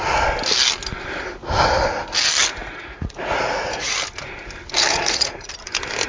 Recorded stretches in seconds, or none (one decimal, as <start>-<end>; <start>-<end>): 0.0-2.6; 3.9-4.9; 5.5-6.1